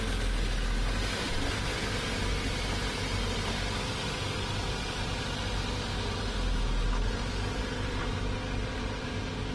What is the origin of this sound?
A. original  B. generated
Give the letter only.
A